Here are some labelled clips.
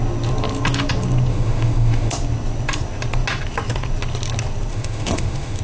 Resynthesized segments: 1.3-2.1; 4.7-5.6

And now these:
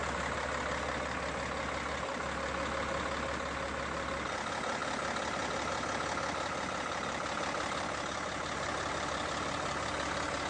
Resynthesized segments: none

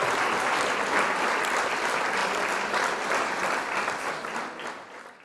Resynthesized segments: 2.2-4.1

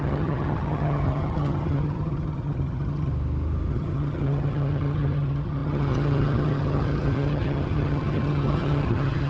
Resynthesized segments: 0.0-3.1; 3.7-9.3

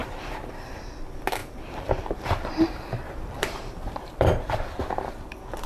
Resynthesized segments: 0.0-0.8; 1.4-4.8

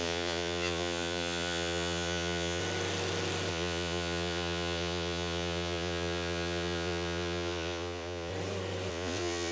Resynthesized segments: 0.0-2.6; 3.5-8.3; 8.9-9.5

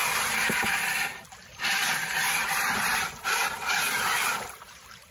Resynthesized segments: 0.0-0.8; 1.5-4.6